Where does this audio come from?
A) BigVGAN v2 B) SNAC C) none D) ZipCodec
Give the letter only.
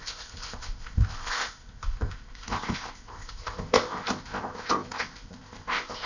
D